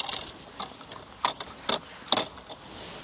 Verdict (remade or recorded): recorded